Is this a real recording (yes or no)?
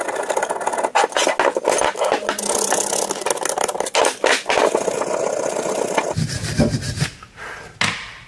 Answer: yes